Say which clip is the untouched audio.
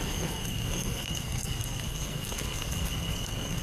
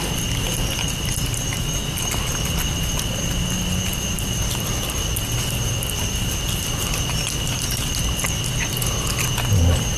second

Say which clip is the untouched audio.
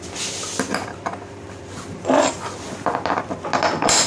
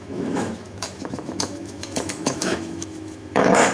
first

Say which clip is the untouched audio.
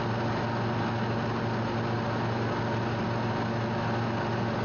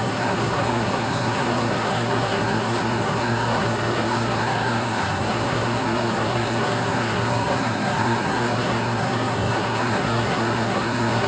first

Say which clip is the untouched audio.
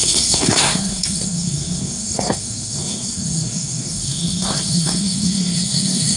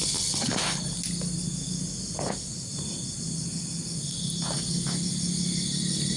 second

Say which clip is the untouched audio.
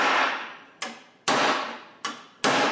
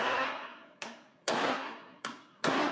first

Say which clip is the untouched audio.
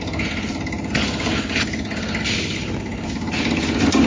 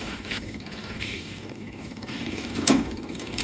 first